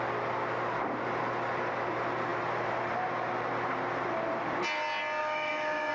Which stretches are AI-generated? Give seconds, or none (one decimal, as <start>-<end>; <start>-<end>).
5.2-5.9

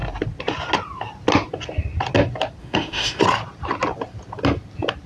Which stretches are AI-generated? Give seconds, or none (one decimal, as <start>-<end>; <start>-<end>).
2.6-3.2

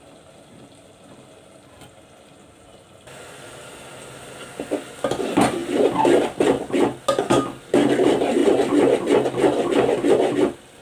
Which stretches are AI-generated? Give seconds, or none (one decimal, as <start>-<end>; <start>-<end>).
none